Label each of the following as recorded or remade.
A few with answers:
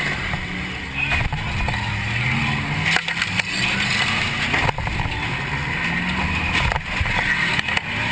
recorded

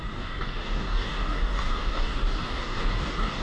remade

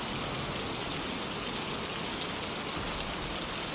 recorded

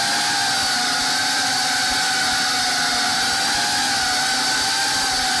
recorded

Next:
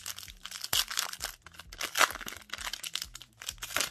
recorded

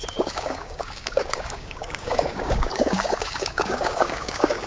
remade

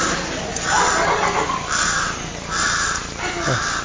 recorded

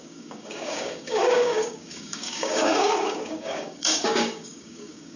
remade